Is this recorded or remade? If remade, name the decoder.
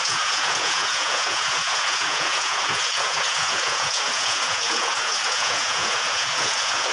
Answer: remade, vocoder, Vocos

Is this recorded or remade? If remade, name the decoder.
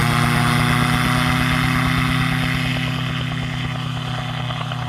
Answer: recorded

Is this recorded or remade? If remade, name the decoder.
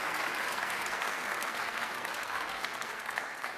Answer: remade, codec, SNAC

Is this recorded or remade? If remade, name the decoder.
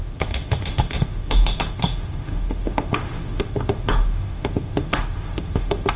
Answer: remade, autoencoder, DAC-VAE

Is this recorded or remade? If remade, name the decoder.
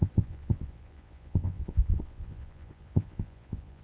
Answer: remade, vocoder, Vocos